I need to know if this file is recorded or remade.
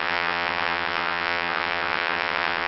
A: remade